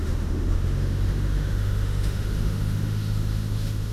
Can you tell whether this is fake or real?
fake